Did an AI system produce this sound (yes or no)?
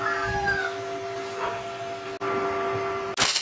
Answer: no